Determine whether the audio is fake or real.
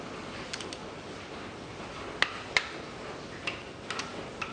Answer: real